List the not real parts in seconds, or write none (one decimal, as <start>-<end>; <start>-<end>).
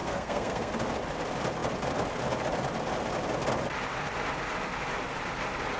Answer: 0.0-0.7